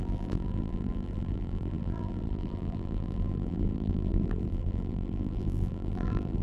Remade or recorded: remade